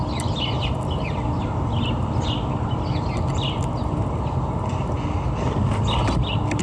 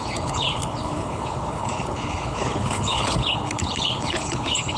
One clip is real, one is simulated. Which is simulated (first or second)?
second